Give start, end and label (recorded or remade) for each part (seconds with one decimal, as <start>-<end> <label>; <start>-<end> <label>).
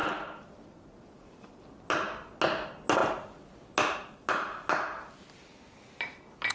0.0-6.5 recorded